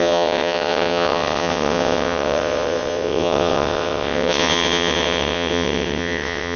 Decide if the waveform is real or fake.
fake